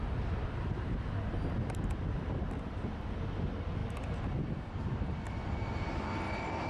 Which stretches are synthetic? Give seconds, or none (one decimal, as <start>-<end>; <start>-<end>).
none